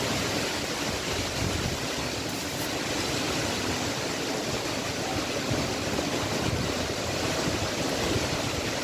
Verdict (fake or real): real